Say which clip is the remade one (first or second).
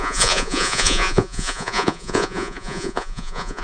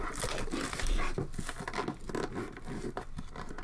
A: first